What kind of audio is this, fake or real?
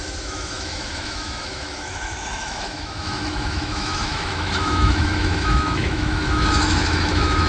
fake